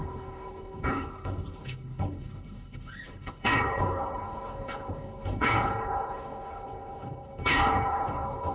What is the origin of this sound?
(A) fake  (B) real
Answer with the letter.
A